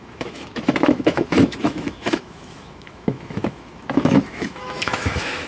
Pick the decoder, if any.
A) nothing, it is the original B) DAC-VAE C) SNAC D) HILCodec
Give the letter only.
B